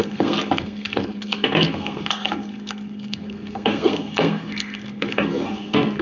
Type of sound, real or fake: fake